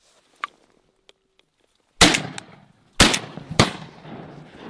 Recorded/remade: recorded